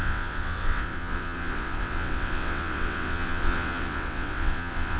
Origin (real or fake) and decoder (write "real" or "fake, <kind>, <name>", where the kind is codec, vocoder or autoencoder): fake, vocoder, WaveNeXt